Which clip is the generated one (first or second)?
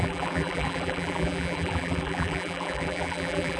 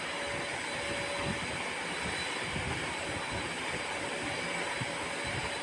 first